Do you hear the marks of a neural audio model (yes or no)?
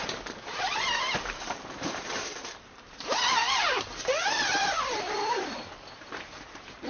yes